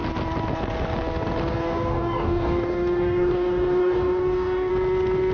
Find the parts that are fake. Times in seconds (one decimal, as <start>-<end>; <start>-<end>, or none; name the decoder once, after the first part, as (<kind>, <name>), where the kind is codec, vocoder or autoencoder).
1.5-4.7 (codec, DAC)